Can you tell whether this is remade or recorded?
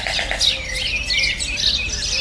recorded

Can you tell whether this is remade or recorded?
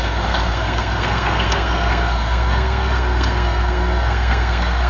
remade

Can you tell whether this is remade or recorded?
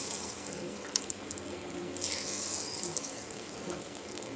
remade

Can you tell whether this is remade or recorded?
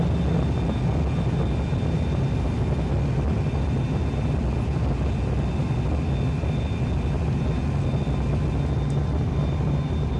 recorded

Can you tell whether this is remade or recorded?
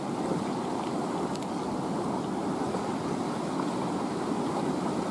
recorded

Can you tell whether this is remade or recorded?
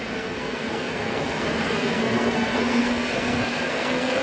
remade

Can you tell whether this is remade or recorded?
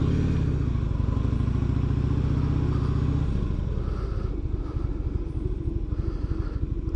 recorded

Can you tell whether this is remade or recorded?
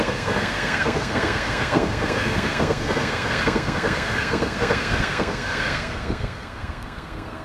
remade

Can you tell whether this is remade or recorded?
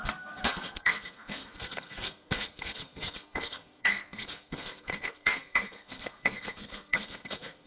remade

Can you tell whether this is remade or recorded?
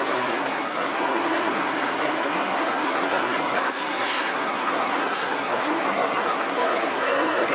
remade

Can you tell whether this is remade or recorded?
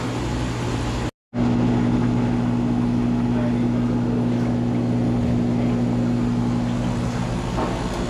recorded